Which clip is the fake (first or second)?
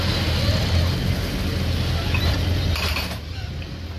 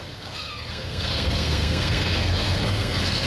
second